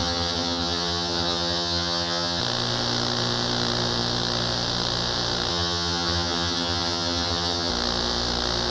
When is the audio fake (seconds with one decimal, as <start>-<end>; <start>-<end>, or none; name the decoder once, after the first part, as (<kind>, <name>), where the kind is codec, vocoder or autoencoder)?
0.0-2.4 (vocoder, HiFi-GAN); 5.5-7.7